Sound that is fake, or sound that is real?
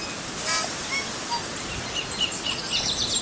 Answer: real